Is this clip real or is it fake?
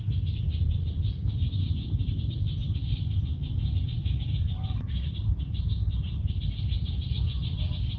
real